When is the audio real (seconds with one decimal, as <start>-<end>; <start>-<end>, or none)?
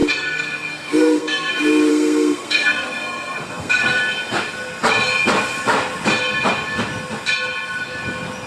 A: 1.5-1.9; 4.0-8.5